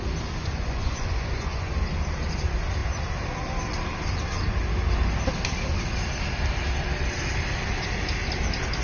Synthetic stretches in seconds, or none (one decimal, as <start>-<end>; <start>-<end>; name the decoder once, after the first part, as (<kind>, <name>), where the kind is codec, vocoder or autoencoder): 0.4-1.7 (vocoder, Vocos)